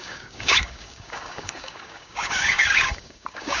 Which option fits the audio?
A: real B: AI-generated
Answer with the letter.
B